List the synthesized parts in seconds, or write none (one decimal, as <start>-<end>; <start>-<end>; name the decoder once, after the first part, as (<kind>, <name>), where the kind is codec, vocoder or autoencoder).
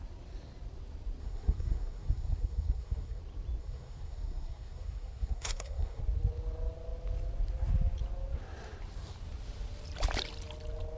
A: 1.2-3.2 (codec, SNAC); 3.6-6.0